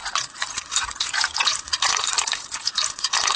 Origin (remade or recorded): remade